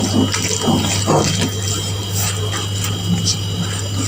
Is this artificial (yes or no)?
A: no